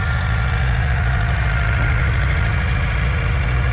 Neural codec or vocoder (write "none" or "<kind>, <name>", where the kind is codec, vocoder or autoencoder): vocoder, Vocos